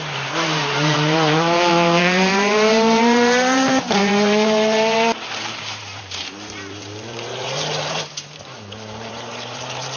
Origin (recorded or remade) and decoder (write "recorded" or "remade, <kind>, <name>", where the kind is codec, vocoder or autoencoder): remade, vocoder, BigVGAN v2